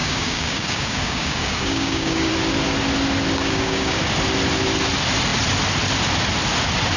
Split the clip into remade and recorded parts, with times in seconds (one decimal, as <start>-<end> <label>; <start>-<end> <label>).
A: 0.0-2.3 remade; 2.3-3.4 recorded; 3.4-4.0 remade; 4.0-7.0 recorded